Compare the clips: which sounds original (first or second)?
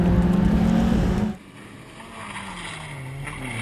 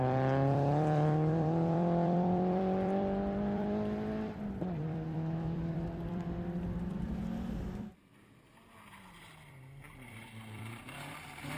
first